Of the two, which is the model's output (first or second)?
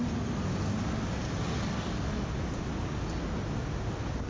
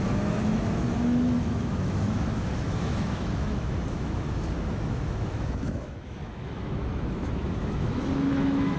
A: second